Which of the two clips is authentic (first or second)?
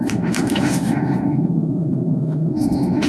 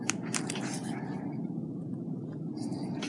second